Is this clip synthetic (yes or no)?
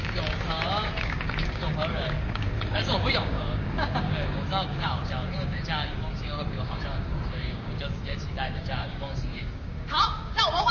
yes